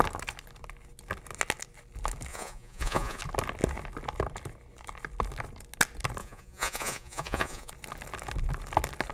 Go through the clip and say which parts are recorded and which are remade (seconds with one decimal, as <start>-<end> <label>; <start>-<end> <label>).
0.0-2.3 recorded; 2.3-3.2 remade; 3.2-6.2 recorded; 6.2-7.7 remade; 7.7-9.1 recorded